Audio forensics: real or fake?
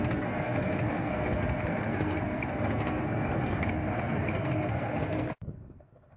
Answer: fake